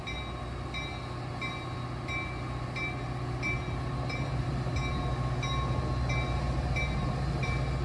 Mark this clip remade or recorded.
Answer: recorded